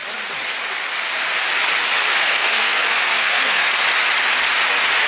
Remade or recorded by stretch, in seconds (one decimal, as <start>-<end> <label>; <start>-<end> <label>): 0.0-2.1 recorded; 2.1-3.7 remade; 3.7-5.1 recorded